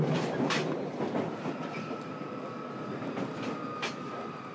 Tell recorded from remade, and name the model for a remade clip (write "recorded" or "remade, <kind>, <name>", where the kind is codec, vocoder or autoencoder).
remade, vocoder, BigVGAN v2